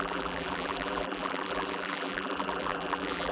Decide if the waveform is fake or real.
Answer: fake